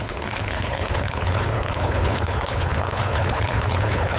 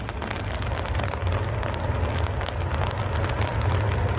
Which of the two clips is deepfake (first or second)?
first